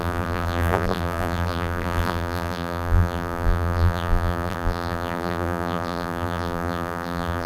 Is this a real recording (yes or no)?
no